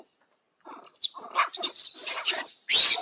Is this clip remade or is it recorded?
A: recorded